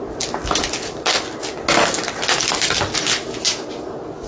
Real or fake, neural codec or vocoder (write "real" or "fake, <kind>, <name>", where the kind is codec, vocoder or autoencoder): real